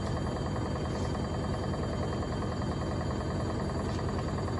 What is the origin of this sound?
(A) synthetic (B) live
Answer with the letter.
B